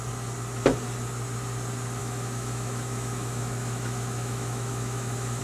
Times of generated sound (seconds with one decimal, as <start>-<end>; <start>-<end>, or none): 2.0-5.4